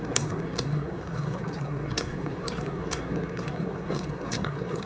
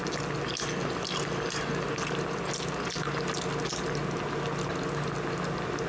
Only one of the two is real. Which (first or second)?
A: second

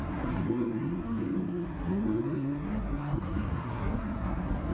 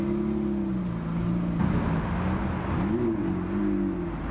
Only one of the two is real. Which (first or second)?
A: second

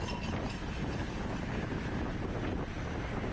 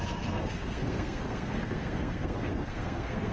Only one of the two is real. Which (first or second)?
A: first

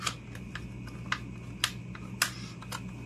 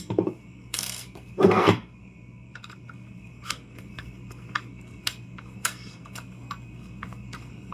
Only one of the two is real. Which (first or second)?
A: first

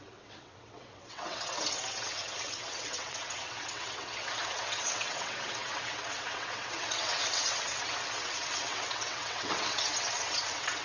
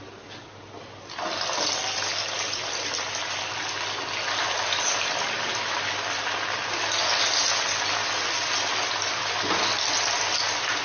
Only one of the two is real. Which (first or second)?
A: second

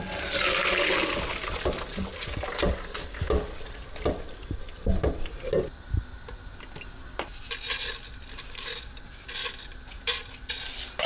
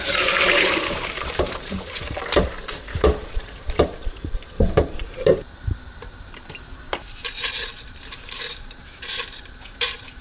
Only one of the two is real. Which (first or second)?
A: first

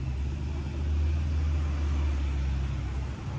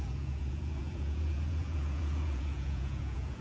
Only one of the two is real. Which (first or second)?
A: first